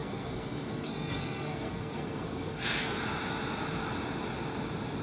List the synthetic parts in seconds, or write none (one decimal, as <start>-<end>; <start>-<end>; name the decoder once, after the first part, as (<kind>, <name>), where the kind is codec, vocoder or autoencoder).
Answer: 0.0-3.0 (codec, SNAC)